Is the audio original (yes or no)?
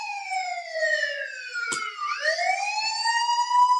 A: yes